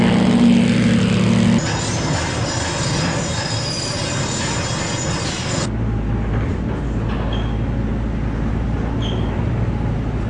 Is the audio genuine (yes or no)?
yes